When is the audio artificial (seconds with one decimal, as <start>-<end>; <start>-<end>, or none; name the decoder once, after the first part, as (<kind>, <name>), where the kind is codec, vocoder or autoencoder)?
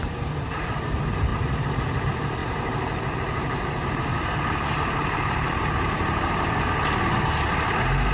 0.0-0.7 (vocoder, BigVGAN v2); 2.4-6.6